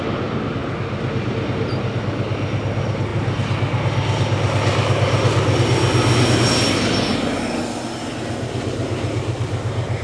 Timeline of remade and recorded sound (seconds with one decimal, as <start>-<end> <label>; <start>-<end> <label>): 0.0-10.0 recorded

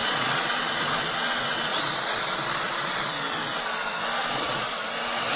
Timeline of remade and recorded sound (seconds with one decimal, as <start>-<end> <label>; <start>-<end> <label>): 0.0-0.6 remade; 0.6-1.7 recorded; 1.7-3.1 remade; 3.1-4.2 recorded; 4.2-4.7 remade; 4.7-5.4 recorded